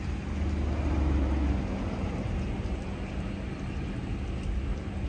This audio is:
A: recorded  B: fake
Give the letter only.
A